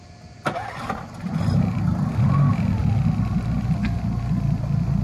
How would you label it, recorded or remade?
recorded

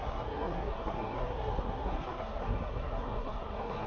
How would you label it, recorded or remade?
remade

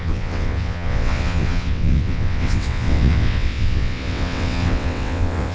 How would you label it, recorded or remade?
remade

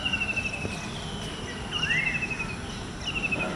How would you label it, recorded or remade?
recorded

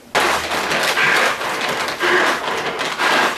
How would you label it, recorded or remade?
recorded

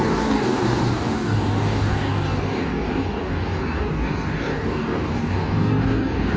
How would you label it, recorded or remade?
remade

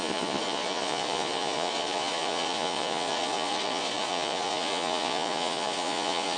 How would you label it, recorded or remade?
remade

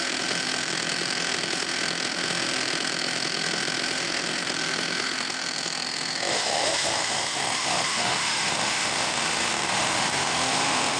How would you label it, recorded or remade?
remade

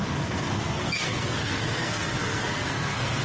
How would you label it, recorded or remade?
remade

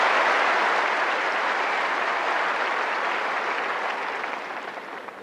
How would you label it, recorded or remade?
recorded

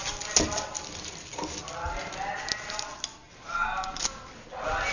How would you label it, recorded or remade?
recorded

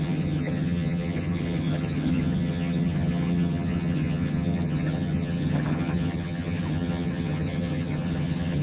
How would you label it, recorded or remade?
remade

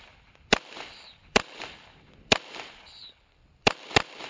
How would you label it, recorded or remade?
remade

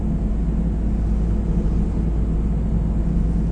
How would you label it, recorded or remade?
recorded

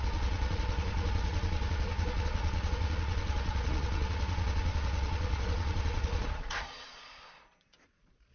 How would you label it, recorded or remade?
remade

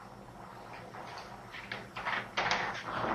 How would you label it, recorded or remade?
recorded